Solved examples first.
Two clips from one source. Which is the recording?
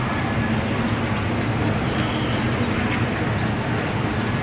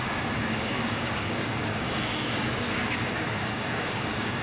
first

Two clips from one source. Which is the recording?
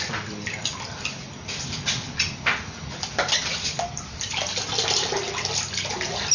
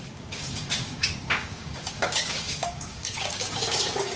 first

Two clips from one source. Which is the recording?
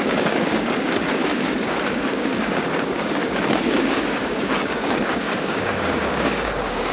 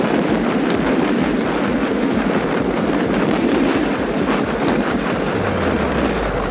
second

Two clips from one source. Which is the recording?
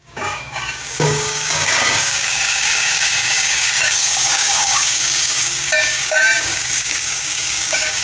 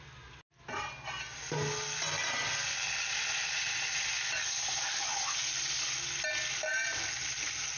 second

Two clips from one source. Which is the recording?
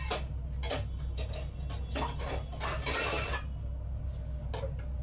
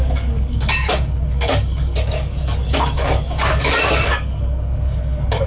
first